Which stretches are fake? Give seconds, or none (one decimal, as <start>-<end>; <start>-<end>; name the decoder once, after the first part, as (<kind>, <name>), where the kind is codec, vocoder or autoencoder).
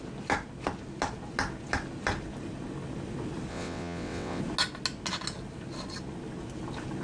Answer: 3.5-4.4 (vocoder, WaveNeXt)